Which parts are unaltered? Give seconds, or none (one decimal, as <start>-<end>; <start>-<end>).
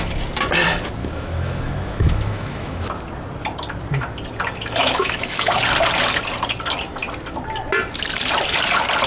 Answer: 0.0-1.0; 2.9-4.8; 5.6-9.1